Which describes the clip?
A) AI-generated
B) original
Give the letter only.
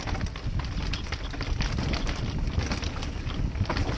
B